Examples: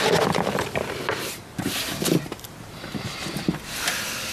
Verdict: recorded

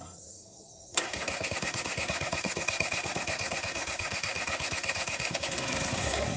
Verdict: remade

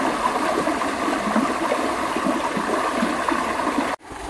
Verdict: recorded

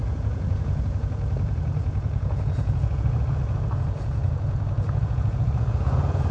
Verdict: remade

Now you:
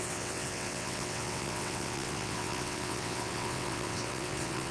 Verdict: remade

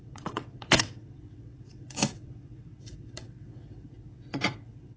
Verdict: remade